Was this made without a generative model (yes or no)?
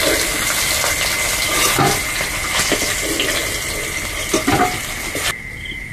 yes